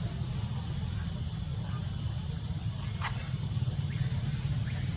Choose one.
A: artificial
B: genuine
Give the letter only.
B